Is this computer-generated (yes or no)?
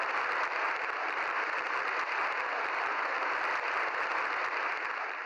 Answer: yes